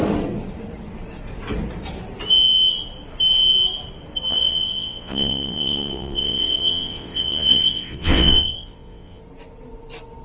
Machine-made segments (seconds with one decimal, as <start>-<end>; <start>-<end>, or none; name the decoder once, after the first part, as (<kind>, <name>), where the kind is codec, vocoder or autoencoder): 4.3-9.2 (vocoder, WaveNeXt)